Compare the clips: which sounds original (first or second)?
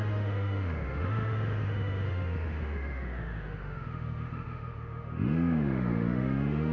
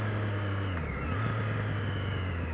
second